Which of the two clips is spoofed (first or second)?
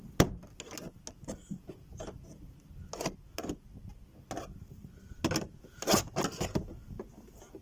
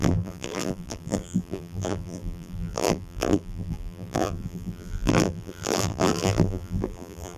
second